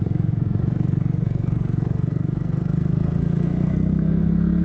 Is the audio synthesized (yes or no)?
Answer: yes